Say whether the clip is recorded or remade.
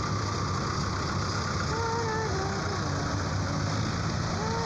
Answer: recorded